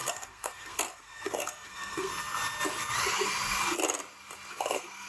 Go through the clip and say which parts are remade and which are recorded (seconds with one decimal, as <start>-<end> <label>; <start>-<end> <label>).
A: 0.0-2.1 remade; 2.1-4.5 recorded; 4.5-5.1 remade